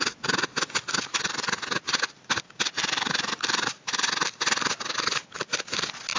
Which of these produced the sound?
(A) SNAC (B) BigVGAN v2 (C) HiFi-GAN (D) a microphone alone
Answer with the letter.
D